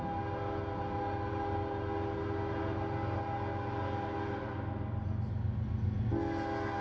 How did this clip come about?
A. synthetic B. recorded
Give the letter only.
B